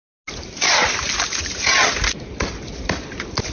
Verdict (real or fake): real